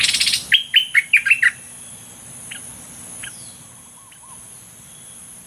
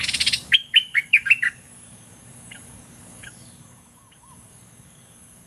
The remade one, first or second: second